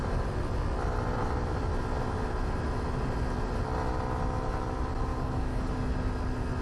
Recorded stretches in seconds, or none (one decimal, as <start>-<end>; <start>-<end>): 0.0-5.1; 5.7-6.6